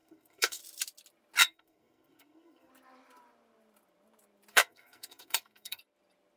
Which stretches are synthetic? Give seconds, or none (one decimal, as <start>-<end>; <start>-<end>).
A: 0.0-0.6; 1.4-2.7; 4.5-5.8